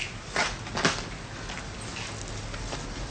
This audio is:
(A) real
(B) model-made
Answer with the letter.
A